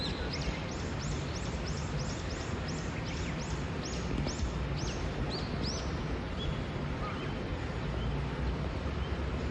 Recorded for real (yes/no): yes